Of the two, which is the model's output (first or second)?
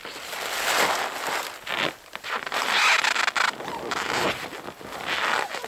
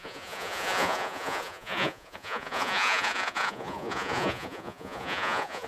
second